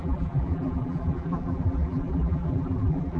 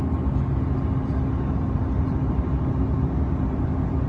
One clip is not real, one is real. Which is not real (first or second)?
first